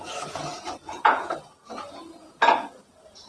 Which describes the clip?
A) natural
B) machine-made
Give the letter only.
B